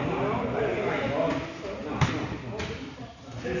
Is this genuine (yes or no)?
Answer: yes